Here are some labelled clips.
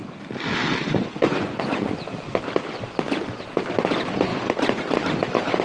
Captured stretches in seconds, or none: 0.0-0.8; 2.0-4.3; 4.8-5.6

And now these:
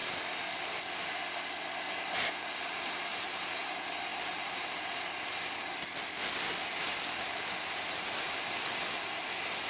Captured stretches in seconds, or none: 0.0-9.7

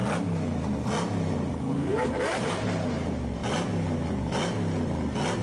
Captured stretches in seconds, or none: 0.0-1.9; 2.9-5.4

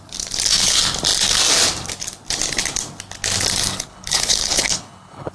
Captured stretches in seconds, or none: 0.0-3.9

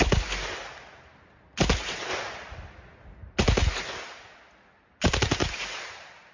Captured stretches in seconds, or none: 0.0-5.4

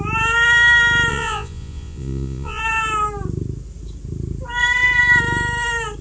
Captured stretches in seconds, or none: 0.0-1.1; 2.6-6.0

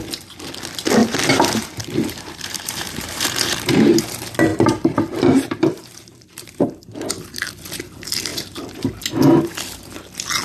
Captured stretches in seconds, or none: 0.0-1.0; 4.0-4.5; 7.1-10.4